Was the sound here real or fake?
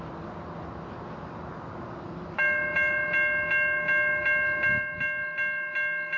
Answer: real